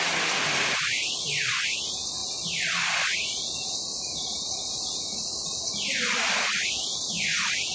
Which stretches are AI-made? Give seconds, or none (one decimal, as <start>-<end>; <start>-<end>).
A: none